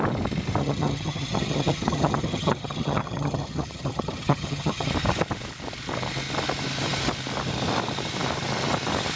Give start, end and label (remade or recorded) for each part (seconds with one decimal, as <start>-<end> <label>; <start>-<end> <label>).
0.0-0.6 recorded; 0.6-4.9 remade; 4.9-9.2 recorded